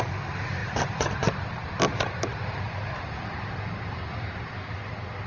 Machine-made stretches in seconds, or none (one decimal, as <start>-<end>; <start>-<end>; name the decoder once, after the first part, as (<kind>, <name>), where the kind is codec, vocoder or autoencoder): none

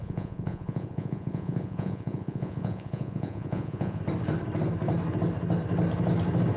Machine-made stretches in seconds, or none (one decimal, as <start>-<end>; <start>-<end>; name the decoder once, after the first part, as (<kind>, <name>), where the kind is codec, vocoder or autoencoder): 0.0-4.0 (vocoder, Vocos)

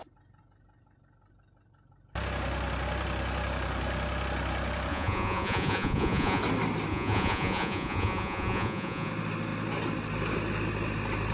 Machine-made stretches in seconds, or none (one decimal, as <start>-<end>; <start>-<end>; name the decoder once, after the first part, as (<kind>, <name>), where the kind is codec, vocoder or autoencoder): 4.9-6.4 (vocoder, Vocos); 6.9-9.1

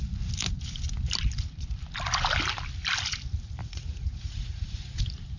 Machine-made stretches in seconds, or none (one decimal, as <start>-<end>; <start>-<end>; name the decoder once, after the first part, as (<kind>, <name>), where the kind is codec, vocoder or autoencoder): 3.6-5.0 (vocoder, Vocos)

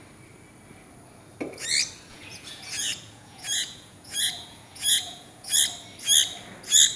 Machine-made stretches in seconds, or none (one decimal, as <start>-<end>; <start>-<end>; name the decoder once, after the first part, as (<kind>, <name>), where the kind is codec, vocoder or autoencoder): 2.1-5.5 (vocoder, Vocos)